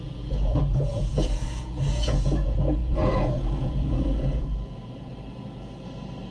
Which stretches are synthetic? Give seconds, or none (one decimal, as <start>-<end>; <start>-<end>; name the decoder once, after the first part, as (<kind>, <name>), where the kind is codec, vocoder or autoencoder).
0.0-5.1 (vocoder, Vocos)